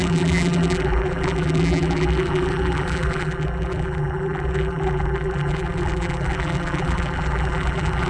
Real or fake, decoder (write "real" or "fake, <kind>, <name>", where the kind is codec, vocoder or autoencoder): fake, vocoder, BigVGAN v2